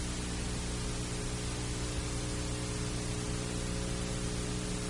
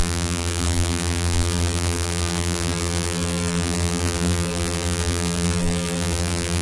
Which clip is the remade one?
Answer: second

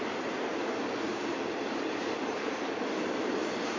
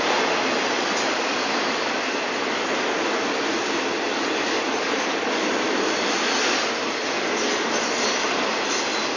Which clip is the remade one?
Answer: first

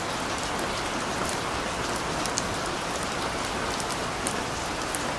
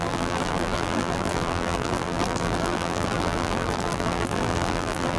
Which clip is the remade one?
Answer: second